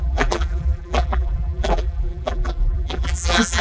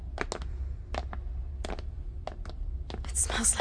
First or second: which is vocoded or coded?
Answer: first